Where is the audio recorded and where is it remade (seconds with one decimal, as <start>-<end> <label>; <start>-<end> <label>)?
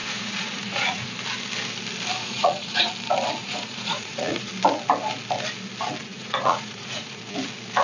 0.0-1.1 remade; 1.1-2.2 recorded; 2.2-2.9 remade; 2.9-3.4 recorded; 3.4-4.5 remade; 4.5-6.0 recorded; 6.0-7.2 remade; 7.2-7.8 recorded